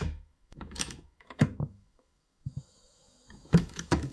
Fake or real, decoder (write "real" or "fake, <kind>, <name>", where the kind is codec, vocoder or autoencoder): fake, autoencoder, DAC-VAE